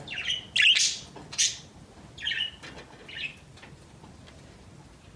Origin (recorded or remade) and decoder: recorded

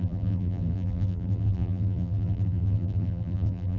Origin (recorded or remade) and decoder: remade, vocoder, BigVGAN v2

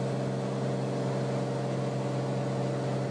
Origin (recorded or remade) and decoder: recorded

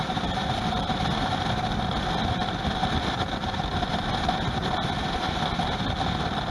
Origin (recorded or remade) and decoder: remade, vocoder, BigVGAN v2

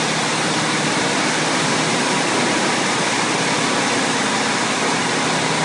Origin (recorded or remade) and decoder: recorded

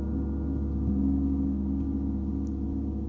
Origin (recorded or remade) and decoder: recorded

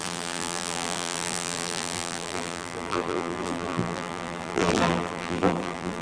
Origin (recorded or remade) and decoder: remade, vocoder, BigVGAN v2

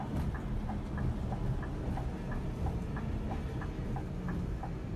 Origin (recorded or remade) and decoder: recorded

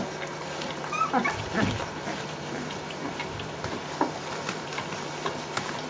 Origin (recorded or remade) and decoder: remade, vocoder, BigVGAN v2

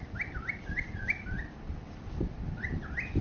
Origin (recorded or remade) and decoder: remade, vocoder, BigVGAN v2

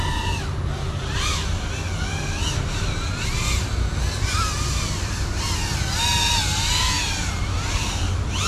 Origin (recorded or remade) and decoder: recorded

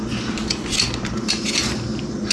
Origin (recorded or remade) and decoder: recorded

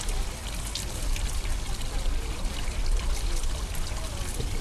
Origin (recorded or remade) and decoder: recorded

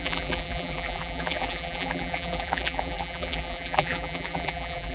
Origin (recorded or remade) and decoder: remade, vocoder, BigVGAN v2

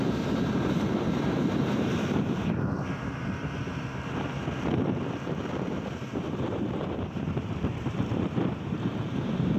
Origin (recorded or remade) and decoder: remade, vocoder, BigVGAN v2